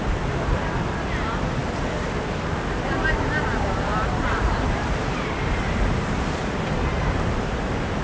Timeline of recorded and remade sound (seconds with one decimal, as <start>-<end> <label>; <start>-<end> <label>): 0.0-1.6 remade; 1.6-3.1 recorded; 3.1-8.0 remade